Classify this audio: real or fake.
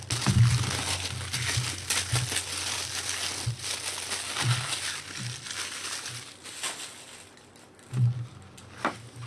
real